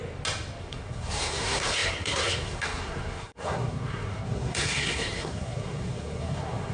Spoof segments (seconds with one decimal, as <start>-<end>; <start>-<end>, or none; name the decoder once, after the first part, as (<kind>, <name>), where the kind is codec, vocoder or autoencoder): 0.6-6.7 (codec, SNAC)